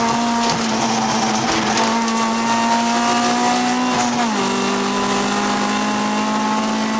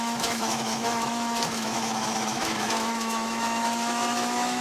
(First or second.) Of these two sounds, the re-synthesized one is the second